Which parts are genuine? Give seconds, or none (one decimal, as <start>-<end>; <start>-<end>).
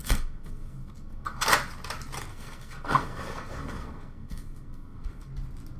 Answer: 1.5-2.3; 5.3-5.8